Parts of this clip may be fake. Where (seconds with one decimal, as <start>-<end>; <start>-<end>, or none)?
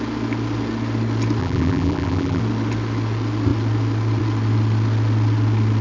1.4-2.4